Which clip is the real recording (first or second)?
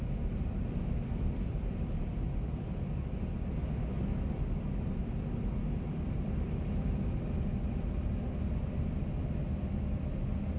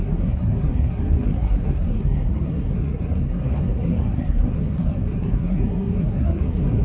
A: first